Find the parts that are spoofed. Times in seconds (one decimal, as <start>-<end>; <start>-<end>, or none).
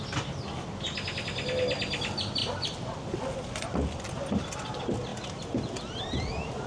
none